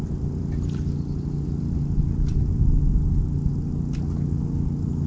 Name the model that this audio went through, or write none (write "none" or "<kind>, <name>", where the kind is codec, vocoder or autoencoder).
none